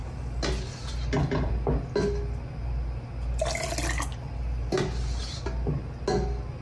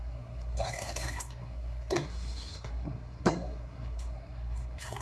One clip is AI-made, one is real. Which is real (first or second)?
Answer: first